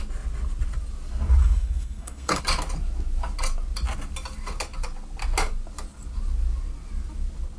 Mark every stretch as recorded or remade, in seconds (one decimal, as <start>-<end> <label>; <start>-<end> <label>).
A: 0.0-1.4 recorded; 1.4-2.4 remade; 2.4-7.6 recorded